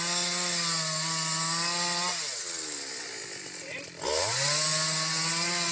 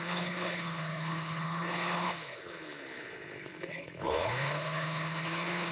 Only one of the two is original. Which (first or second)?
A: first